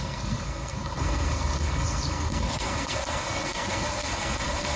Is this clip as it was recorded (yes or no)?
no